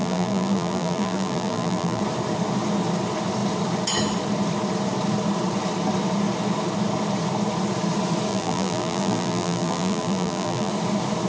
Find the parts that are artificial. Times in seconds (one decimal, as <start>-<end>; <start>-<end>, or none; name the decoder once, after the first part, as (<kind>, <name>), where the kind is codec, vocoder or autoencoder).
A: 0.0-2.0 (vocoder, BigVGAN v2); 8.3-10.7